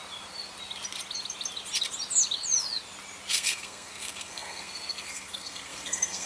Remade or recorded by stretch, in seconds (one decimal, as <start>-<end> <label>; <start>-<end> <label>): 0.0-3.3 recorded; 3.3-6.3 remade